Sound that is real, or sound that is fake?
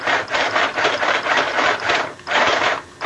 fake